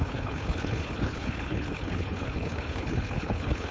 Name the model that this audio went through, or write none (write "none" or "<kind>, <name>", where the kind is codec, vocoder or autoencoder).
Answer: codec, HILCodec